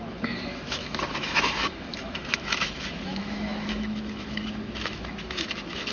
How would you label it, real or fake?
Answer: fake